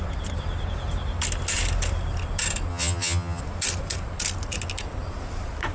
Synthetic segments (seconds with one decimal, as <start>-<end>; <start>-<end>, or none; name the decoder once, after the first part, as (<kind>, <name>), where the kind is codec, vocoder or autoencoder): 2.7-3.4 (vocoder, HiFi-GAN)

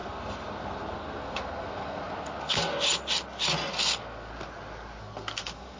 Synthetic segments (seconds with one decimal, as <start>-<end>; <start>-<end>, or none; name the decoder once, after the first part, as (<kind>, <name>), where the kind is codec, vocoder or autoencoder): 0.0-2.7 (codec, SNAC); 3.7-4.3; 5.0-5.8

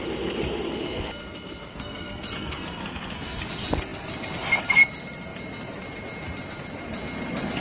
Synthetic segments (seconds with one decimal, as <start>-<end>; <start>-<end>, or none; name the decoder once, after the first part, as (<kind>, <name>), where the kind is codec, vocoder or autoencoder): 1.7-3.4 (codec, SNAC)

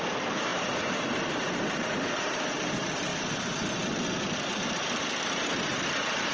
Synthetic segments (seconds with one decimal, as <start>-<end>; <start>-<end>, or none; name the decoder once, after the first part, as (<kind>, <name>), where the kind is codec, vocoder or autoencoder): 0.5-1.4 (vocoder, BigVGAN v2)

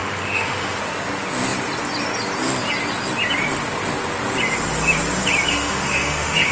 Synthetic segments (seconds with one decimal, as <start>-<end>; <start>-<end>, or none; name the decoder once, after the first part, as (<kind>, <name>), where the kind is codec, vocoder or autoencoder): 0.0-0.8 (autoencoder, DAC-VAE); 5.5-6.5

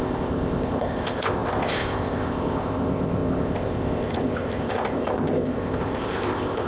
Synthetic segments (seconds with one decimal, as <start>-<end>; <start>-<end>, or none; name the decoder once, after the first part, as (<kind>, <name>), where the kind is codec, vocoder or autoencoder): 0.0-6.7 (codec, ZipCodec)